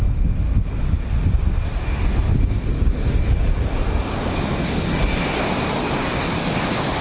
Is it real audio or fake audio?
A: real